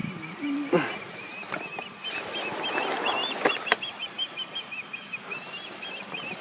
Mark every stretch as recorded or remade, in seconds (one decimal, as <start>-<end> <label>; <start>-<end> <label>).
0.0-3.8 recorded; 3.8-4.5 remade; 4.5-5.5 recorded; 5.5-6.4 remade